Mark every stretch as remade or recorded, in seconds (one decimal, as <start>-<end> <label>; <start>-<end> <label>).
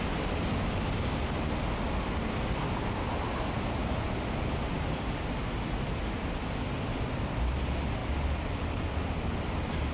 0.0-9.9 recorded